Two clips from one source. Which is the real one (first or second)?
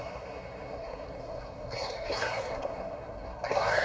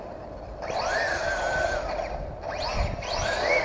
second